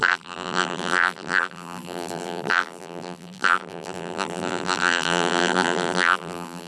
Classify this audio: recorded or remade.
remade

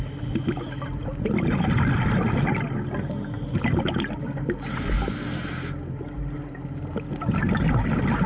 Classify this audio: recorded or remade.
recorded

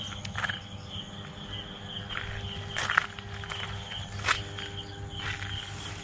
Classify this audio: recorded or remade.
recorded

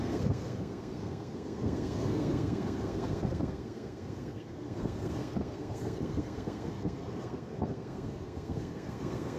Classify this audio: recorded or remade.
remade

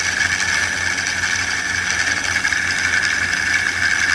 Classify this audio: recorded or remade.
recorded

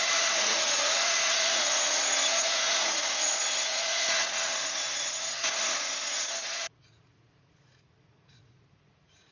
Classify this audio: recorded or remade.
remade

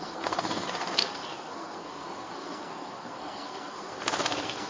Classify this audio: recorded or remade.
remade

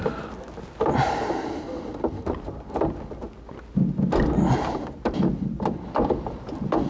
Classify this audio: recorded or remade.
recorded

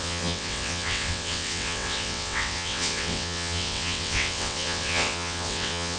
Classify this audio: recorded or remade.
remade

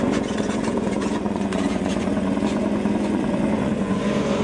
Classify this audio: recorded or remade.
remade